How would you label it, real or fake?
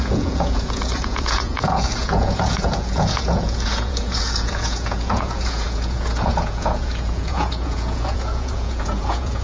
fake